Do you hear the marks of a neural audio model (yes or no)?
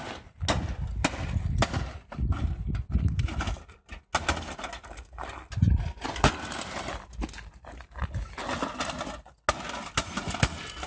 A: no